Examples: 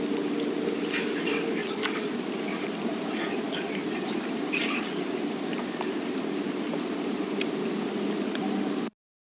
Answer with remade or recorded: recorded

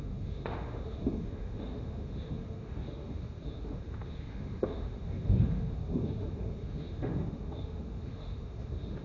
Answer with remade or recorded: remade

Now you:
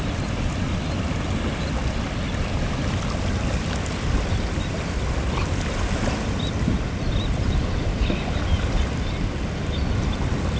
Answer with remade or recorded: recorded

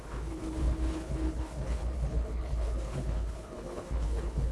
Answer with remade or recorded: remade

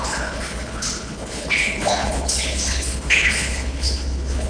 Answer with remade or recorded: remade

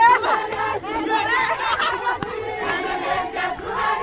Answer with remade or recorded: remade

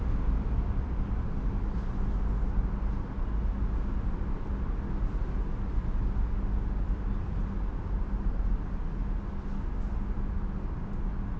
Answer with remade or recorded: recorded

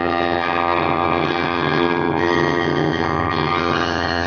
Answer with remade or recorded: remade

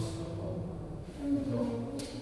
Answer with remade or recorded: remade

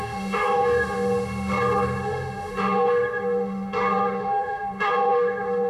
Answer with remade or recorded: remade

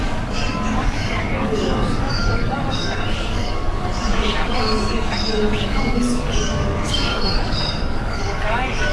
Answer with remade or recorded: remade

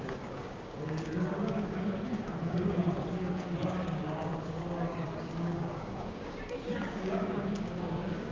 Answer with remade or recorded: remade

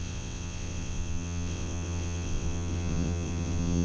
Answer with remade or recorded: remade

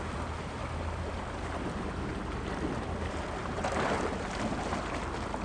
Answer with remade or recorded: recorded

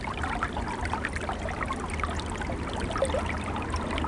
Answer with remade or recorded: recorded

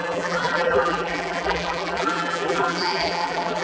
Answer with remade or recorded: remade